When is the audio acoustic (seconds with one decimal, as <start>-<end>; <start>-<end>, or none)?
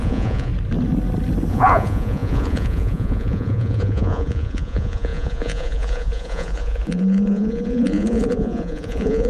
0.5-1.5